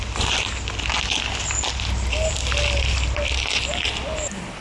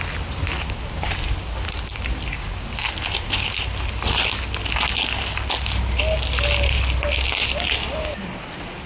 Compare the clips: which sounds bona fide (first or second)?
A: second